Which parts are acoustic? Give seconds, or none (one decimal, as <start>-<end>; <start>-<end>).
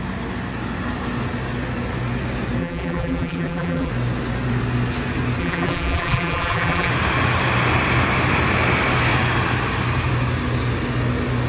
0.0-2.6; 3.9-5.4; 6.9-11.5